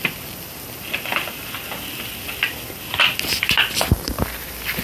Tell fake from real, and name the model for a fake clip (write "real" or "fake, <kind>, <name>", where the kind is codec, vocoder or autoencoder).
real